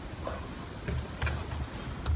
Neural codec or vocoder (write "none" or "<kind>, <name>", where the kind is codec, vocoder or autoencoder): none